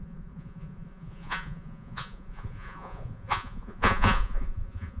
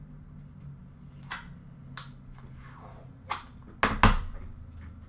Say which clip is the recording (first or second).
second